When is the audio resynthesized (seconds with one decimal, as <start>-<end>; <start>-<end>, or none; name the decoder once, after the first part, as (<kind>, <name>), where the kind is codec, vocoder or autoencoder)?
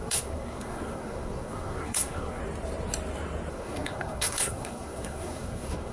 0.0-2.4 (codec, SNAC); 3.5-5.9